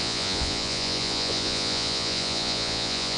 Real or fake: fake